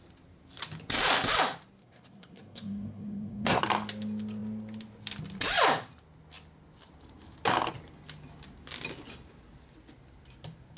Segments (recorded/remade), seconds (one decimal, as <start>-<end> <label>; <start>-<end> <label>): 0.0-1.8 recorded; 1.8-3.6 remade; 3.6-10.8 recorded